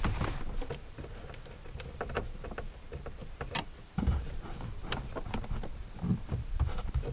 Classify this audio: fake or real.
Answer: fake